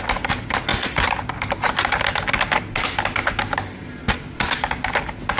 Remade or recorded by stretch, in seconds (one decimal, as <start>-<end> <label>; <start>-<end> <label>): 0.0-5.4 recorded